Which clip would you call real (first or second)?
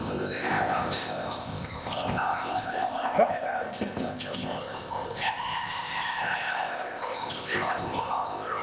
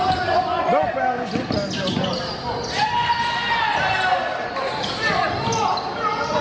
second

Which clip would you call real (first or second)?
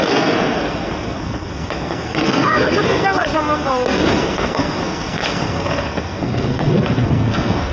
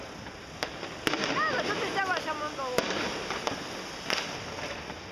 second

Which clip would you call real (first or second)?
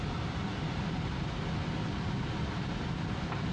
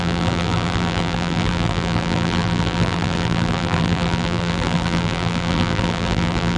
first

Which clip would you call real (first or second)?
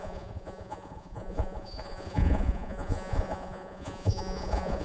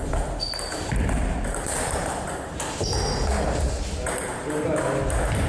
second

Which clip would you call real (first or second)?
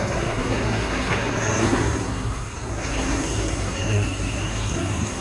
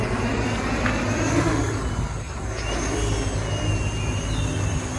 second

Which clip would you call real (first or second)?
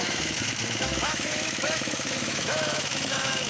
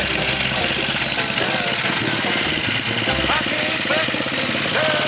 second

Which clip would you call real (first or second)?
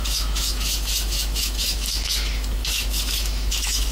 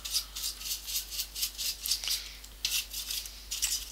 second